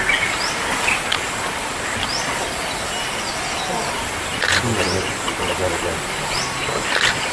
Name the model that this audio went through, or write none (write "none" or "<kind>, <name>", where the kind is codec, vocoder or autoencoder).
none